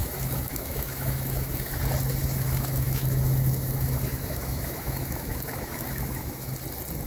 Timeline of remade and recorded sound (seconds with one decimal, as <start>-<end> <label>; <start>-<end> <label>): 0.0-1.8 remade; 1.8-2.2 recorded; 2.2-6.5 remade; 6.5-7.1 recorded